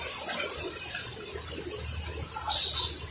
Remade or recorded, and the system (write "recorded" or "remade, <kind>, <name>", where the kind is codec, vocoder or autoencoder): recorded